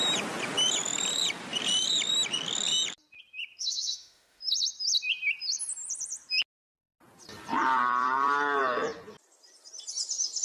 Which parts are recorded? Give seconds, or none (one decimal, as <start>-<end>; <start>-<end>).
0.0-3.6; 4.4-10.4